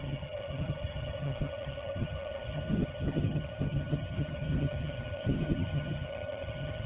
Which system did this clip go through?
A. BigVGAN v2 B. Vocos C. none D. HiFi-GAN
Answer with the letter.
D